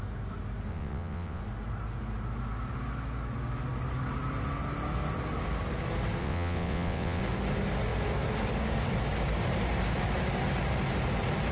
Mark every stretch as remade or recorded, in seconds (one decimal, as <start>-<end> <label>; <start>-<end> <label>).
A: 0.0-0.7 recorded; 0.7-1.4 remade; 1.4-6.2 recorded; 6.2-7.2 remade; 7.2-11.5 recorded